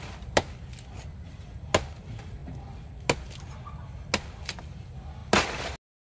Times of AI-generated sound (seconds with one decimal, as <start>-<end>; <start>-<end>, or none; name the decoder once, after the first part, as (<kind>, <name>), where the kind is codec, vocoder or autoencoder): none